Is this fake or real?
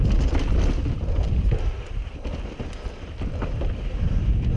real